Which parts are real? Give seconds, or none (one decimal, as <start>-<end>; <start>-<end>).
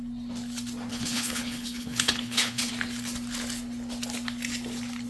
0.0-0.9; 2.7-5.1